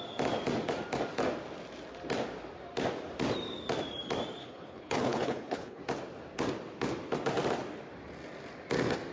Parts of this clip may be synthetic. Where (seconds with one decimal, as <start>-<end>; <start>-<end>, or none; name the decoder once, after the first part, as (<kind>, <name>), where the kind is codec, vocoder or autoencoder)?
4.4-5.8 (codec, HILCodec)